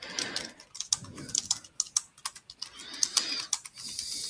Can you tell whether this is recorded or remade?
recorded